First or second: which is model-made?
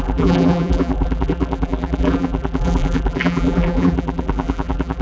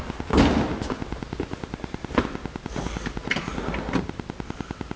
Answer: first